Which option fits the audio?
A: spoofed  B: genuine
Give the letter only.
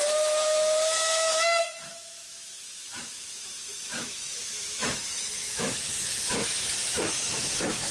A